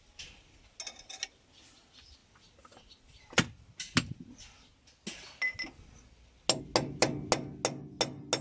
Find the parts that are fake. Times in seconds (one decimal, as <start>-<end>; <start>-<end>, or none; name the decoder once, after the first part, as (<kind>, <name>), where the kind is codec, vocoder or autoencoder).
none